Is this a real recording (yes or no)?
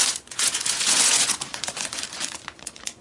no